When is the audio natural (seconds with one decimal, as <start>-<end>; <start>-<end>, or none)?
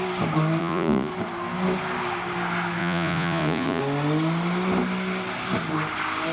0.0-0.6; 1.1-2.8; 3.8-6.3